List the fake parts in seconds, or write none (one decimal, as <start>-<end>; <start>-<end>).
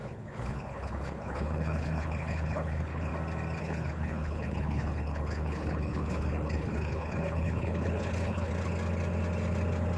0.0-3.1; 3.6-8.5